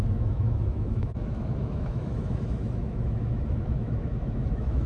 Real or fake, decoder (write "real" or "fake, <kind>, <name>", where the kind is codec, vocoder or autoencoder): fake, autoencoder, DAC-VAE